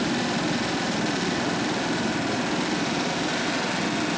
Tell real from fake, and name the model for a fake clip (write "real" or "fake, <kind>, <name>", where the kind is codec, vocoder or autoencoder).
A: real